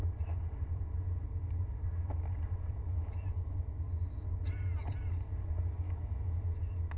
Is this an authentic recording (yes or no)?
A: yes